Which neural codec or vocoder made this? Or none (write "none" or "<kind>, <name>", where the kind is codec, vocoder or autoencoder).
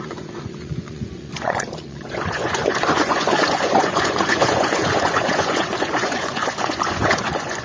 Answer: vocoder, Vocos